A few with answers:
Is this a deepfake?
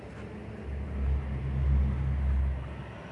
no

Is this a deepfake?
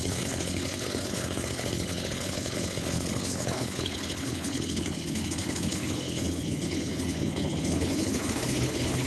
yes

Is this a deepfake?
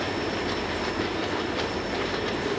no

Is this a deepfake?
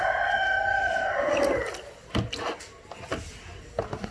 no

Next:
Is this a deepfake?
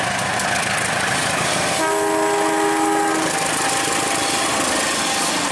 no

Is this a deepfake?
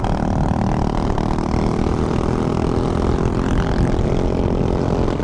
no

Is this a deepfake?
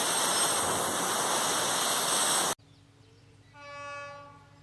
no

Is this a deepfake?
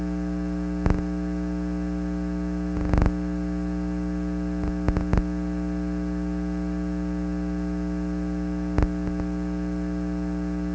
no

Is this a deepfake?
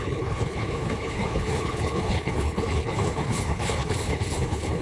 yes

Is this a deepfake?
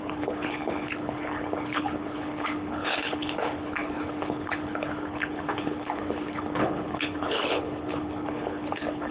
yes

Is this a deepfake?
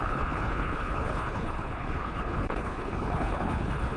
yes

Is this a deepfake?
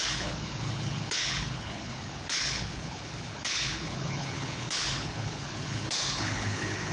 yes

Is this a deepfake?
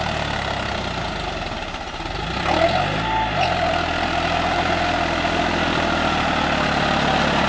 no